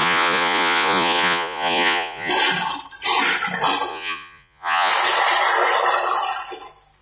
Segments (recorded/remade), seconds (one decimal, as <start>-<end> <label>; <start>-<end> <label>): 0.0-2.3 remade; 2.3-3.9 recorded; 3.9-4.9 remade; 4.9-7.0 recorded